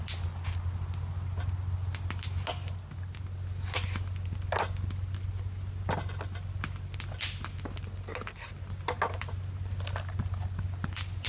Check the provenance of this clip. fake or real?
real